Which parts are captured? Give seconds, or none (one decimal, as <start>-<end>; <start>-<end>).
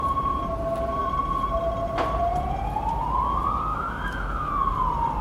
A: 0.0-3.7; 4.5-5.2